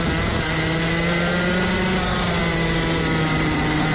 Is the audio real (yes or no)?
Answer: yes